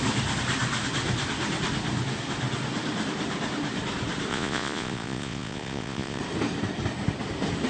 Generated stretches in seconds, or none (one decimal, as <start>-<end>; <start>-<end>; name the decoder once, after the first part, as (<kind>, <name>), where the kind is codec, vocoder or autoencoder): 4.3-6.2 (vocoder, Vocos)